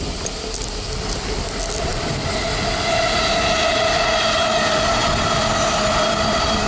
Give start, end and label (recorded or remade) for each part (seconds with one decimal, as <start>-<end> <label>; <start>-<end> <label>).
0.0-6.7 recorded